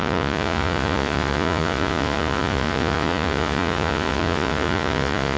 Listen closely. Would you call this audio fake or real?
fake